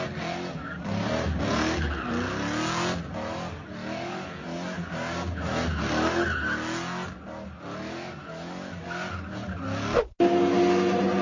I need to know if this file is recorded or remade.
recorded